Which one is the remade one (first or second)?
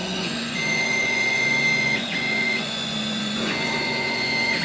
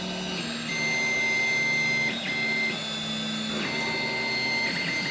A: first